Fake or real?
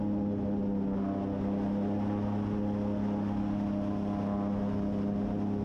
real